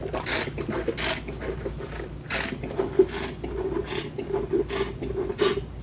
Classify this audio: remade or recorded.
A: recorded